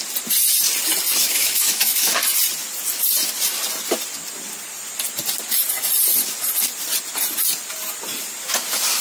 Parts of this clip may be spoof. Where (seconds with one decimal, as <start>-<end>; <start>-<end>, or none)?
1.2-2.2

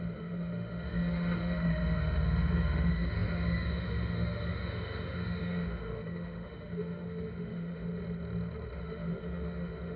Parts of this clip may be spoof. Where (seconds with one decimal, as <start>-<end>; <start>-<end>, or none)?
0.0-8.0; 8.8-10.0